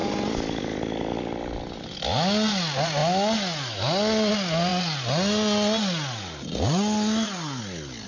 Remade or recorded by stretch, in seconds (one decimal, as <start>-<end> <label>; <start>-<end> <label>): 0.0-8.1 recorded